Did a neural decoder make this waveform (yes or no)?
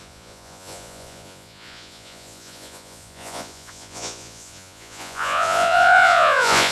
yes